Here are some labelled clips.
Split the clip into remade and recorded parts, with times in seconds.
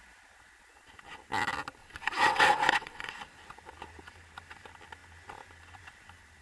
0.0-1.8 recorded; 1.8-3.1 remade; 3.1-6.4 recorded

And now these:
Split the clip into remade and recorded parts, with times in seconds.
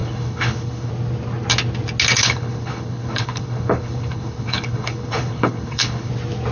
0.0-0.9 remade; 0.9-2.2 recorded; 2.2-6.1 remade; 6.1-6.5 recorded